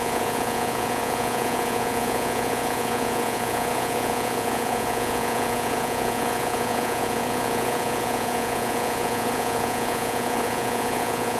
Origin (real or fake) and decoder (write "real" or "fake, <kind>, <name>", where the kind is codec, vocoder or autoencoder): fake, vocoder, Vocos